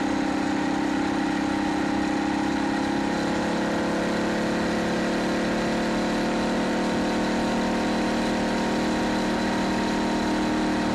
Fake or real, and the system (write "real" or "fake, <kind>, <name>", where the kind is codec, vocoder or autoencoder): real